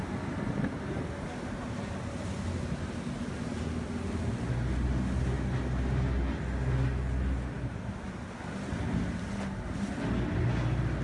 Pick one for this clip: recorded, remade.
recorded